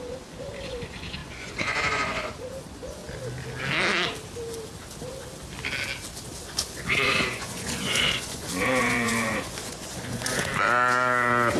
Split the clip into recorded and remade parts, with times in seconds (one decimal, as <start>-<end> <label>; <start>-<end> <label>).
0.0-3.0 remade; 3.0-6.4 recorded; 6.4-10.5 remade; 10.5-11.6 recorded